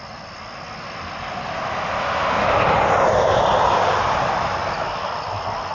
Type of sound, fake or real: real